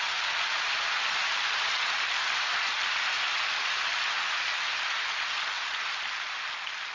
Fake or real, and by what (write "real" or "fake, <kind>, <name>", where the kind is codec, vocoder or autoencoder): real